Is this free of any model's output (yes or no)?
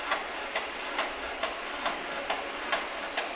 yes